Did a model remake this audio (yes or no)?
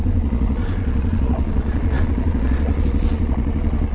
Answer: yes